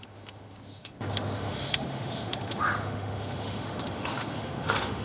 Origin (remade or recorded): remade